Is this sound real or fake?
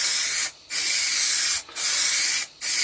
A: real